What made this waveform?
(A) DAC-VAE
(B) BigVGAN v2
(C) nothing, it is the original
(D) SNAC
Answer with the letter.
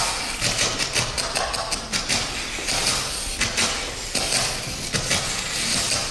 C